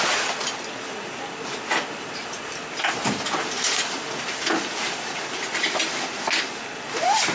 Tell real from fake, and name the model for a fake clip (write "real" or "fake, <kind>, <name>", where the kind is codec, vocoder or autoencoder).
real